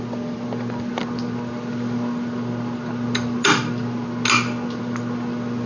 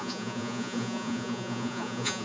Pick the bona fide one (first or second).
first